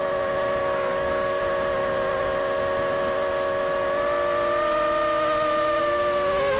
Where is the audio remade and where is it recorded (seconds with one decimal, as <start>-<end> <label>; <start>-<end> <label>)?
0.0-0.6 recorded; 0.6-1.4 remade; 1.4-6.6 recorded